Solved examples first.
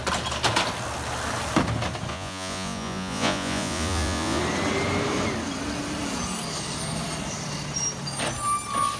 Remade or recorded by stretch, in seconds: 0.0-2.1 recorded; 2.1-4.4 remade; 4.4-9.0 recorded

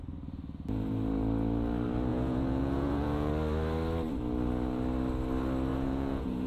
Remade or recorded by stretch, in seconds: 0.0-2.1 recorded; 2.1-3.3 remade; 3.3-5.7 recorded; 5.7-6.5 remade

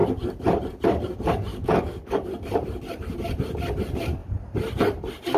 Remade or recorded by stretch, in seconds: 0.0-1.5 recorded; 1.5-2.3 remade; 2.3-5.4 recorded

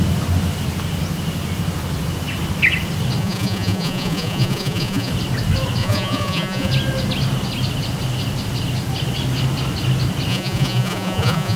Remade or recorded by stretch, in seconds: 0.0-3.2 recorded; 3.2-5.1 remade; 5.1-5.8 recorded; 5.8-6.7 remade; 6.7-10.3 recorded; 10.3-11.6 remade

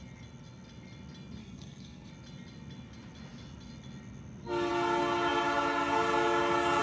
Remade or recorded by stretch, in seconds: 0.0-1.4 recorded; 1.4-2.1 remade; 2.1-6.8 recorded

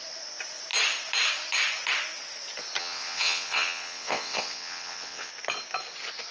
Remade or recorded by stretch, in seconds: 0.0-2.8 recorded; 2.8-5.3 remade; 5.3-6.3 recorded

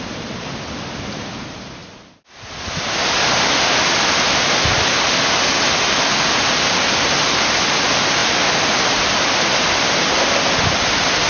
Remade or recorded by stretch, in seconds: 0.0-8.2 recorded; 8.2-9.8 remade; 9.8-11.3 recorded

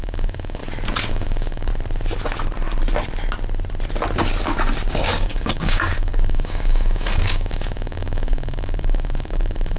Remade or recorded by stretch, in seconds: 0.0-0.6 remade; 0.6-1.1 recorded; 1.1-1.7 remade; 1.7-4.9 recorded; 4.9-9.8 remade